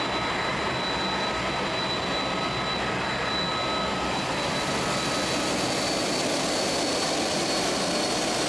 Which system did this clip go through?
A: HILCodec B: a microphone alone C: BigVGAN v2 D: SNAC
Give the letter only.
B